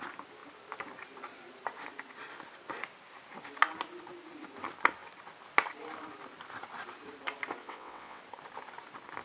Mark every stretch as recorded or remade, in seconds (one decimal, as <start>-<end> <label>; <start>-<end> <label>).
0.0-7.6 recorded; 7.6-8.2 remade; 8.2-9.2 recorded